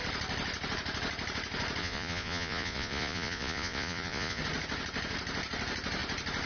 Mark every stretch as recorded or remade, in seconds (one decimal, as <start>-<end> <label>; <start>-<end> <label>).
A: 0.0-1.8 recorded; 1.8-4.4 remade; 4.4-6.5 recorded